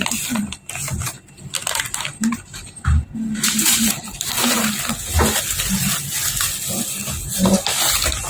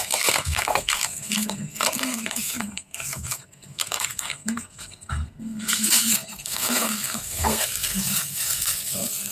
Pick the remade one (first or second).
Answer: second